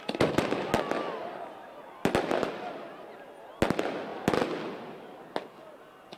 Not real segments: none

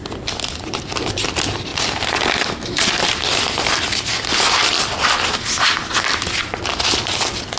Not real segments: none

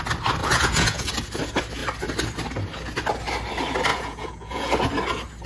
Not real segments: 0.4-1.1 (vocoder, Vocos); 3.9-4.7

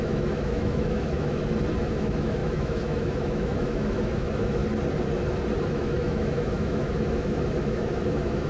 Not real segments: 0.0-1.4 (autoencoder, DAC-VAE); 1.9-4.6; 5.7-8.5

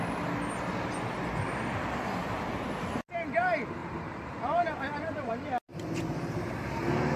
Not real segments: 3.8-5.3 (vocoder, BigVGAN v2); 5.7-6.5